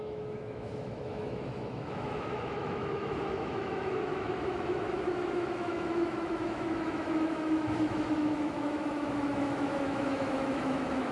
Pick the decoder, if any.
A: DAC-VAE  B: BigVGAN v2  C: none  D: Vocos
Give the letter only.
A